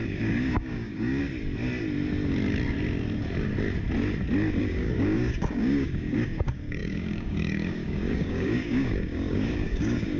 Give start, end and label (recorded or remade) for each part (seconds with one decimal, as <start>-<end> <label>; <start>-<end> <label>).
0.0-1.2 remade; 1.2-4.6 recorded; 4.6-10.2 remade